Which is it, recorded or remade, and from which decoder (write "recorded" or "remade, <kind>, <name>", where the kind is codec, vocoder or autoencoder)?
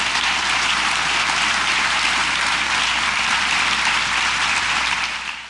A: remade, vocoder, BigVGAN v2